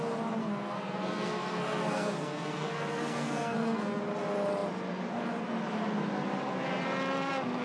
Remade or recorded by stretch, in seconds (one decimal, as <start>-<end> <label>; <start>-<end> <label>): 0.0-0.4 recorded; 0.4-4.0 remade; 4.0-7.6 recorded